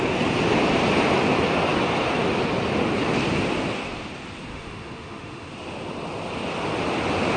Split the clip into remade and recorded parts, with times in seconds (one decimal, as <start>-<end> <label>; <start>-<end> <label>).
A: 0.0-4.5 recorded; 4.5-5.5 remade; 5.5-7.4 recorded